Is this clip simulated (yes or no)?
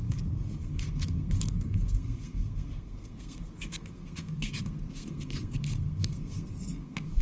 yes